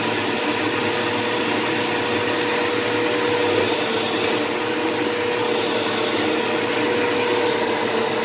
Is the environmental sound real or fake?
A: real